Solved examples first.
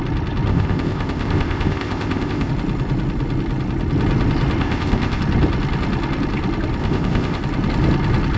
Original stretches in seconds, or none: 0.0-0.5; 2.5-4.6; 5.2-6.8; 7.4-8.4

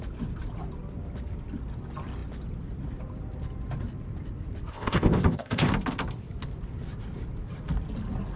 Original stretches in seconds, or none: 0.0-4.7; 5.7-8.4

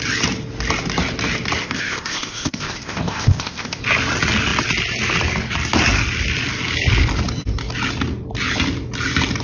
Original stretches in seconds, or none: 0.0-1.6; 3.8-9.4

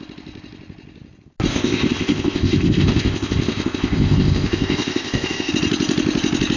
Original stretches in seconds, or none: 0.0-1.5; 5.5-6.6

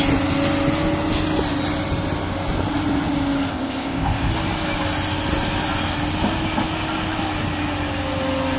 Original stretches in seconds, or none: 0.0-3.5; 4.3-8.6

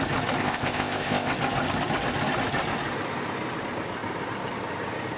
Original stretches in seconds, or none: 0.0-0.4; 1.3-5.2

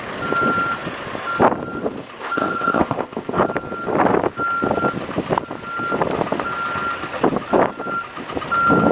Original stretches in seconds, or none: 0.0-2.2; 3.4-8.9

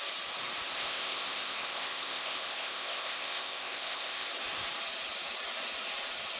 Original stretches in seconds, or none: 0.0-0.7; 4.3-6.4